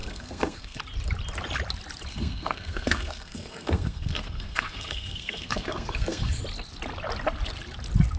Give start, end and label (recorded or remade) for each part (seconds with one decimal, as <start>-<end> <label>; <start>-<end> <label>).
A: 0.0-0.8 remade; 0.8-2.1 recorded; 2.1-6.4 remade; 6.4-8.2 recorded